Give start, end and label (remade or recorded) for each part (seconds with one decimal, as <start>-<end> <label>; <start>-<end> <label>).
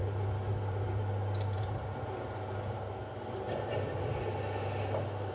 0.0-5.3 recorded